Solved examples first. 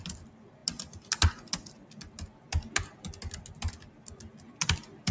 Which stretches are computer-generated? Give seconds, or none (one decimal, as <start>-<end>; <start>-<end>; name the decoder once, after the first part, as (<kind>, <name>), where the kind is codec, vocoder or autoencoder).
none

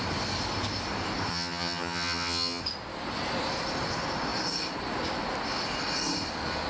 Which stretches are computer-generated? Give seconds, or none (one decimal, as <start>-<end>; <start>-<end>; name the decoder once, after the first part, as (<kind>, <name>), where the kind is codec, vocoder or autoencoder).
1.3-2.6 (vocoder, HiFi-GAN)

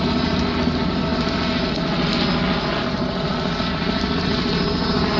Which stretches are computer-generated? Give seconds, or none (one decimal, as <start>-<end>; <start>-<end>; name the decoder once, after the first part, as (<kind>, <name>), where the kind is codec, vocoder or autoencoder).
none

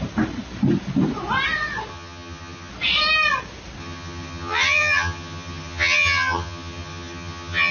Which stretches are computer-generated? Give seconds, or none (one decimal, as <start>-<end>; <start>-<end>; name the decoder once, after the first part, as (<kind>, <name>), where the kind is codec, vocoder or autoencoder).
1.9-2.7 (vocoder, HiFi-GAN); 3.8-7.7

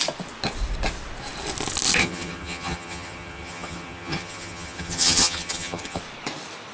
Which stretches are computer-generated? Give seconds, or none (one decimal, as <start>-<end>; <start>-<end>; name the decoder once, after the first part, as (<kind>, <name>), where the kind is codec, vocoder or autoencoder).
2.0-6.0 (vocoder, HiFi-GAN)

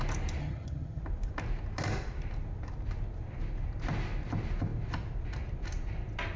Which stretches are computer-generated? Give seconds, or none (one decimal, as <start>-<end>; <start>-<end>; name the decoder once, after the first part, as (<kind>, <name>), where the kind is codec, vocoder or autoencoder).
0.4-1.0 (vocoder, HiFi-GAN)

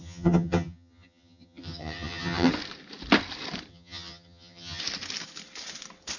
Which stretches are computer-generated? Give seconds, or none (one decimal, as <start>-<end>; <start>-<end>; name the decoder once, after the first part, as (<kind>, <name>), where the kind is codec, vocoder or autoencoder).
0.0-2.5 (vocoder, HiFi-GAN); 3.7-4.8

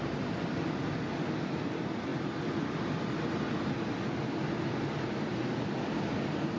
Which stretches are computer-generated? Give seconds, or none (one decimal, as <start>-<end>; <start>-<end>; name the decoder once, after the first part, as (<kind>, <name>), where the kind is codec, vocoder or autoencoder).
none